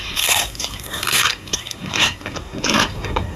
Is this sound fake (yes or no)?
yes